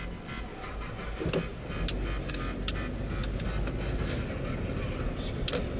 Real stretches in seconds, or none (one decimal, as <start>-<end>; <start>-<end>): 0.0-5.8